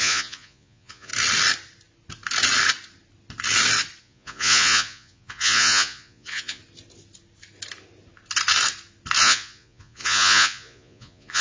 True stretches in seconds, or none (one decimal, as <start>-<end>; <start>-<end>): 1.1-4.0; 6.6-9.2